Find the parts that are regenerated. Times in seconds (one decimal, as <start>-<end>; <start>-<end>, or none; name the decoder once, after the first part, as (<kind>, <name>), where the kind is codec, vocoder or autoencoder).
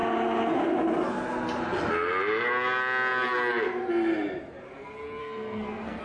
5.2-6.0 (codec, SNAC)